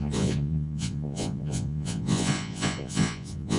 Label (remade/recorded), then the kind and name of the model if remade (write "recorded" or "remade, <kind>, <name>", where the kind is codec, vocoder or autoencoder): remade, vocoder, Vocos